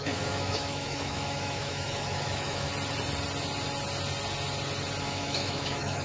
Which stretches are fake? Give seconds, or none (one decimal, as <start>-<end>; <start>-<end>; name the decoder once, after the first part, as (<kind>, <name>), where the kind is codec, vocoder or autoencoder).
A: 0.0-2.7 (autoencoder, DAC-VAE); 5.0-6.0